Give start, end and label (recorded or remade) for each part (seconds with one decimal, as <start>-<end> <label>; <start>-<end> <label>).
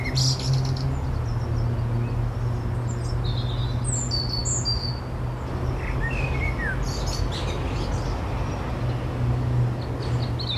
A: 0.0-10.6 recorded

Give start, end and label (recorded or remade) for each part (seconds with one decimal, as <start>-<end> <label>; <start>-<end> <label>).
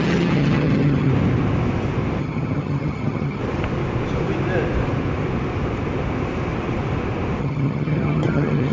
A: 0.0-1.1 remade; 1.1-2.2 recorded; 2.2-3.4 remade; 3.4-7.4 recorded; 7.4-8.7 remade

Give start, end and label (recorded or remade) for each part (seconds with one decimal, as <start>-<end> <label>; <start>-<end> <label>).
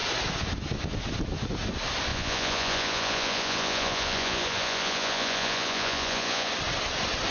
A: 0.0-2.1 recorded; 2.1-6.5 remade; 6.5-7.3 recorded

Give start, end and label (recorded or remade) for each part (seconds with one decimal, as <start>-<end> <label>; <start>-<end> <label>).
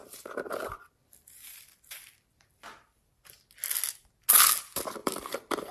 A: 0.0-3.4 remade; 3.4-5.0 recorded; 5.0-5.7 remade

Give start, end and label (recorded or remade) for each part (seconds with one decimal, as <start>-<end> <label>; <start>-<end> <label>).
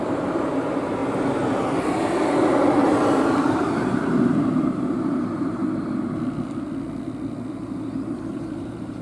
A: 0.0-1.0 remade; 1.0-3.3 recorded; 3.3-5.6 remade; 5.6-7.5 recorded; 7.5-9.0 remade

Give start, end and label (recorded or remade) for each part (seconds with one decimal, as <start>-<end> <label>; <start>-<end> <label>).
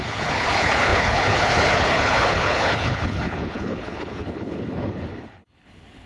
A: 0.0-6.1 remade